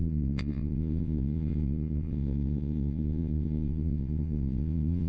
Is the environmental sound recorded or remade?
remade